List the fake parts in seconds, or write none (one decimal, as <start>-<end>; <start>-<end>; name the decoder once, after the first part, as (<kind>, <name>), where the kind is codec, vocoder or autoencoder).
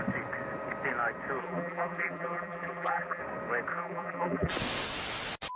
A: 1.4-3.2 (vocoder, BigVGAN v2); 3.7-4.5